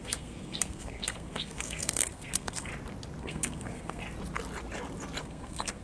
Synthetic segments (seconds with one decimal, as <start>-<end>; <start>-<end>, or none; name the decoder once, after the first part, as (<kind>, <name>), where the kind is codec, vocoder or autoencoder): 0.0-2.7 (codec, SNAC); 3.2-4.0; 5.2-5.8